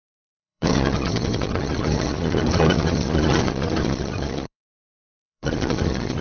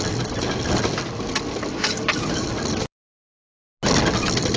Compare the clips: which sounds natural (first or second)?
second